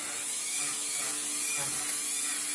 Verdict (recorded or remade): recorded